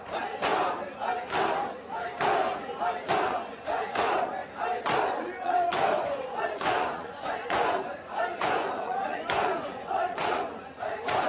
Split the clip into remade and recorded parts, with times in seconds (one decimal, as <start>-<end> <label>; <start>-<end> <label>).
0.0-0.5 remade; 0.5-3.1 recorded; 3.1-4.4 remade; 4.4-5.0 recorded; 5.0-11.3 remade